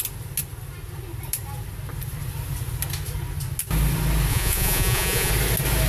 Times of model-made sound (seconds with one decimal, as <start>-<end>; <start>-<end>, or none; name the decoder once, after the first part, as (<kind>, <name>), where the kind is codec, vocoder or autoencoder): 4.3-5.3 (vocoder, Vocos)